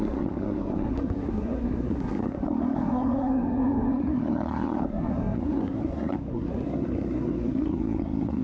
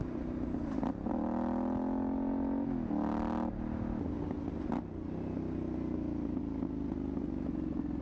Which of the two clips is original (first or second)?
second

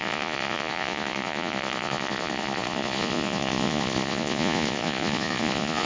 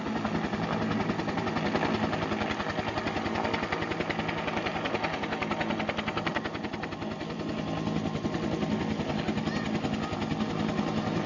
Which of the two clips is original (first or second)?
second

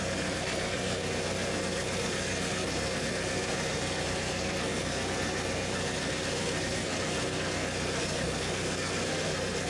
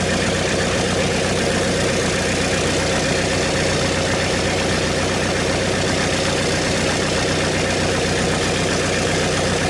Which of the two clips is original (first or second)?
second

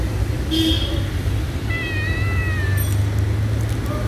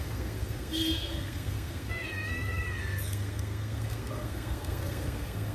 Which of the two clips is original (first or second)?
first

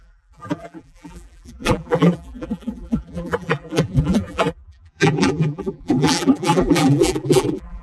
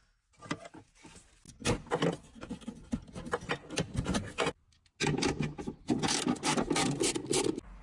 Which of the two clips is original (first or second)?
second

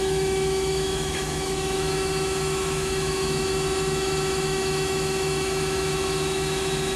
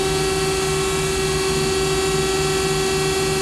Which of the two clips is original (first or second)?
second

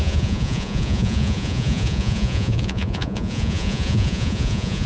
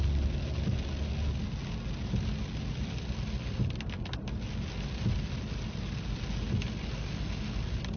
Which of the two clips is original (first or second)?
second